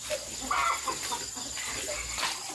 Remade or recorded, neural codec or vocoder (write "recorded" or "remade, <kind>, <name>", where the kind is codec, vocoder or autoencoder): recorded